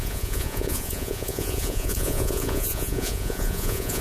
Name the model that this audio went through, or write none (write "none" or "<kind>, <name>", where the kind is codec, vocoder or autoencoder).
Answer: vocoder, Vocos